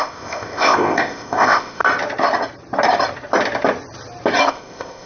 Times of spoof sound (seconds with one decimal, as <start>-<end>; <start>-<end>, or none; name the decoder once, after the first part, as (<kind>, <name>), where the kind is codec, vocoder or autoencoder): 0.0-1.8 (codec, ZipCodec); 4.5-5.1